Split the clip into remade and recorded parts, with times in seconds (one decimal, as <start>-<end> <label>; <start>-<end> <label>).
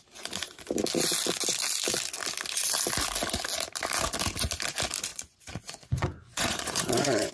0.0-5.1 recorded; 5.1-7.3 remade